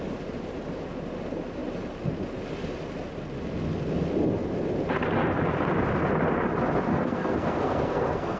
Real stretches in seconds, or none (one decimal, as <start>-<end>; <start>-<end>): 0.0-6.9